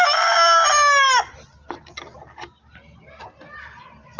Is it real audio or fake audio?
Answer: real